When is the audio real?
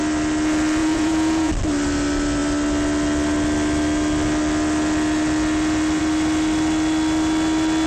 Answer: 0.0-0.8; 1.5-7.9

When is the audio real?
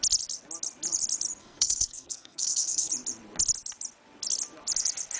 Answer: 0.0-1.4; 2.9-5.2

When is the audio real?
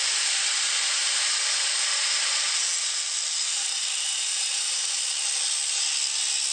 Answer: 0.5-1.0; 2.5-4.1; 5.0-6.5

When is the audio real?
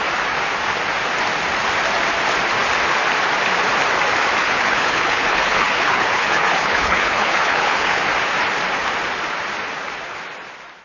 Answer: 0.0-4.4; 8.0-10.8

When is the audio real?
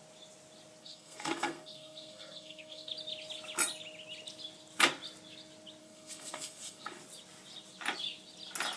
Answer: 0.0-0.8; 2.9-5.8; 7.0-8.8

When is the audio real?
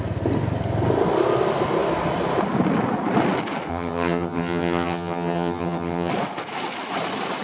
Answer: 0.0-3.7; 6.1-7.4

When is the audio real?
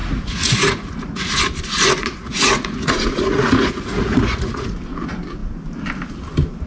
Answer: 1.4-2.0; 4.8-6.7